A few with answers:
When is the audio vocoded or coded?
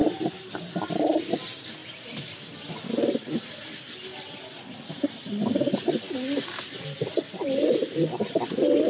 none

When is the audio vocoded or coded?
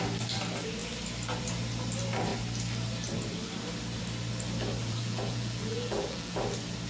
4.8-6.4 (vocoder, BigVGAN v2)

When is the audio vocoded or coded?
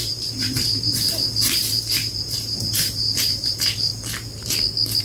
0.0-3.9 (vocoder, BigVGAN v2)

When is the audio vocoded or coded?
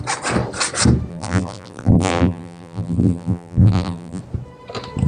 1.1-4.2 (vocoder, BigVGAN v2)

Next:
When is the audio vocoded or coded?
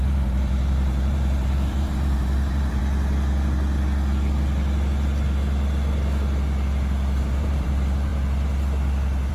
0.0-2.8 (vocoder, BigVGAN v2); 7.2-8.1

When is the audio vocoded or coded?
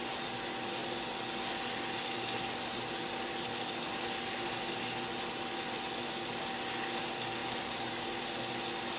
7.4-7.9 (vocoder, BigVGAN v2)